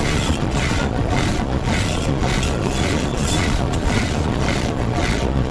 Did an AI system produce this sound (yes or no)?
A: yes